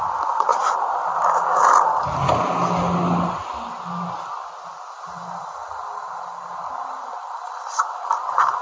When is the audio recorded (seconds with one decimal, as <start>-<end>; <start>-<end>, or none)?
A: 0.0-8.6